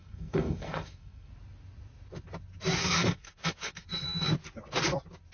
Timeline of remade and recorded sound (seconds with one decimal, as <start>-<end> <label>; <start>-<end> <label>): 0.0-1.3 remade; 1.3-2.8 recorded; 2.8-4.3 remade; 4.3-5.3 recorded